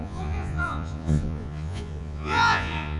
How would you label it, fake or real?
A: fake